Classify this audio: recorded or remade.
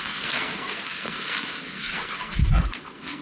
remade